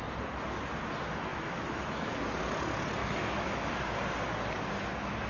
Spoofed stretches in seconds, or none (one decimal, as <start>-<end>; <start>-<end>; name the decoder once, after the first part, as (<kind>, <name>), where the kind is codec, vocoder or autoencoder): 1.3-2.1 (autoencoder, DAC-VAE); 3.0-3.7